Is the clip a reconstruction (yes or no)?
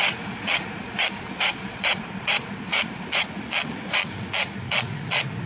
yes